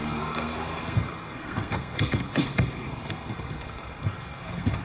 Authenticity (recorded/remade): remade